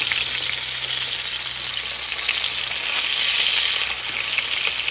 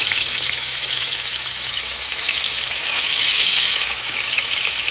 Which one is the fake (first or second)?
second